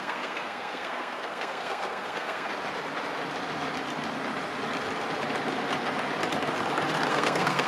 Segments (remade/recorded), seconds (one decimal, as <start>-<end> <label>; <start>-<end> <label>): 0.0-2.5 remade; 2.5-7.1 recorded; 7.1-7.7 remade